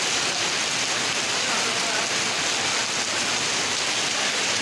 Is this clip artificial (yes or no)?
no